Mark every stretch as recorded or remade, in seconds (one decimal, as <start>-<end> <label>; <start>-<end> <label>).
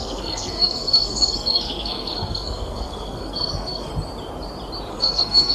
0.0-3.9 remade; 3.9-4.9 recorded; 4.9-5.5 remade